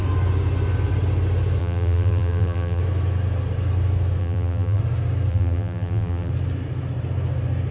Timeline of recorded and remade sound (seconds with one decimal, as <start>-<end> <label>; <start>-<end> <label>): 0.0-1.6 recorded; 1.6-2.8 remade; 2.8-4.2 recorded; 4.2-4.8 remade; 4.8-5.3 recorded; 5.3-6.3 remade; 6.3-7.7 recorded